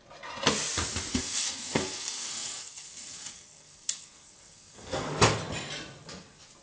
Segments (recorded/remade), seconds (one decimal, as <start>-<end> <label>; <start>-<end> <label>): 0.0-1.1 recorded; 1.1-5.1 remade; 5.1-6.6 recorded